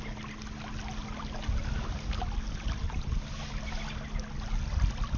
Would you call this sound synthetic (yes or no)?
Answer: no